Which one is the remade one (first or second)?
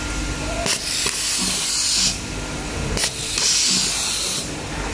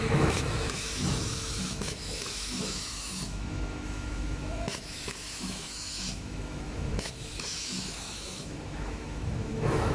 second